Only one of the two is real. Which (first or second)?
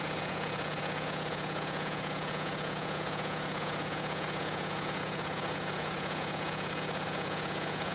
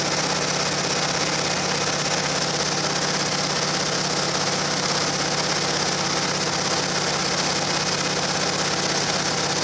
second